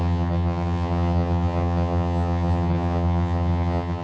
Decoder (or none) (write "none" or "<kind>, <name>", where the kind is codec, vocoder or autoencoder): vocoder, HiFi-GAN